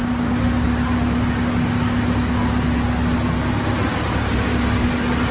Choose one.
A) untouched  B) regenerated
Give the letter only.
A